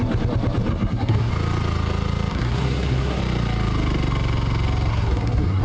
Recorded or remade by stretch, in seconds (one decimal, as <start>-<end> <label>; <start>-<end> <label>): 0.0-0.7 recorded; 0.7-1.3 remade; 1.3-2.3 recorded; 2.3-3.2 remade; 3.2-4.9 recorded; 4.9-5.6 remade